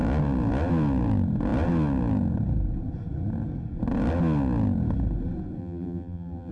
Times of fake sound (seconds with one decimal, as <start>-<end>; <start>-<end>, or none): 5.6-6.5